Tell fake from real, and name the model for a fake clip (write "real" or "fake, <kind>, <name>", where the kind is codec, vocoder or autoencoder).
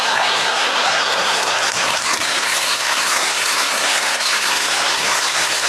fake, codec, SNAC